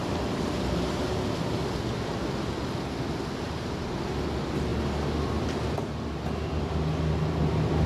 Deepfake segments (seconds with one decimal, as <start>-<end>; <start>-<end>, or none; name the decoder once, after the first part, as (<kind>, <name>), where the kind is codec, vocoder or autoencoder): none